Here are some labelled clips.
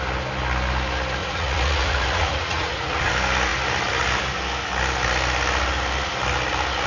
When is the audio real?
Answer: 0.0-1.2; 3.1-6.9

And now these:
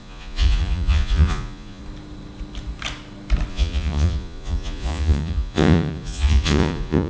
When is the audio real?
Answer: 1.8-3.5

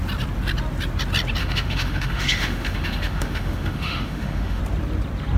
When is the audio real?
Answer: 0.0-1.4; 4.6-5.4

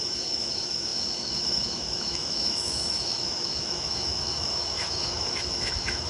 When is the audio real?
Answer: none

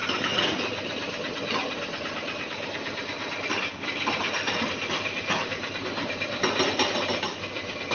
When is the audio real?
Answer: 0.0-7.9

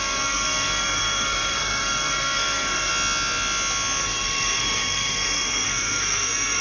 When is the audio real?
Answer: 2.9-4.0

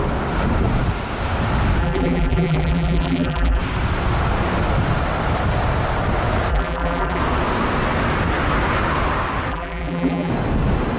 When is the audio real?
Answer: 0.0-1.8; 3.6-6.5; 7.2-9.5; 10.3-11.0

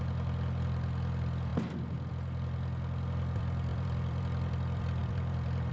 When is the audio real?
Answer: 0.0-3.7; 4.5-5.0